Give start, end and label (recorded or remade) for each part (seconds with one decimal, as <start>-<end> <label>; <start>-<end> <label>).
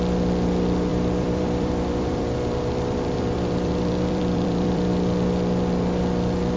0.0-0.9 recorded; 0.9-4.9 remade; 4.9-6.6 recorded